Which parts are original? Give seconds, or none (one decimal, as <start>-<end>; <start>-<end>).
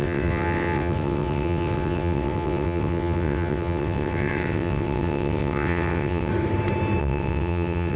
6.3-7.0